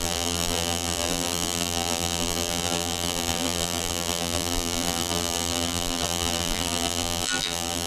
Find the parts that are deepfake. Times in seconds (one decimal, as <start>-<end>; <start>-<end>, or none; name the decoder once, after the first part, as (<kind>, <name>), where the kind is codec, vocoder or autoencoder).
0.0-7.9 (vocoder, BigVGAN v2)